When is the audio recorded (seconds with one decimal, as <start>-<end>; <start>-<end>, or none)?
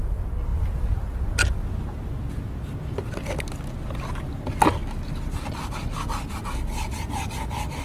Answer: 0.0-7.8